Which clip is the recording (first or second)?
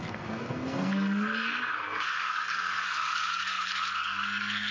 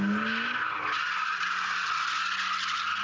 second